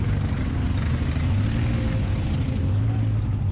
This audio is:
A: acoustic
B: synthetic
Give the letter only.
A